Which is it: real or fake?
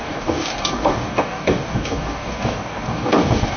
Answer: fake